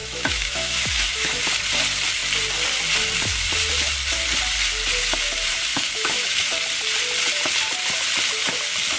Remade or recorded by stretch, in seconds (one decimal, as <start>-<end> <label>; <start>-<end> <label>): 0.0-1.4 remade; 1.4-5.7 recorded; 5.7-6.5 remade; 6.5-9.0 recorded